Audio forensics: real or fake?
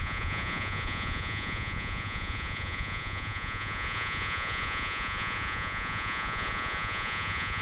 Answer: fake